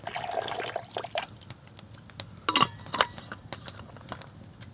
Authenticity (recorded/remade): recorded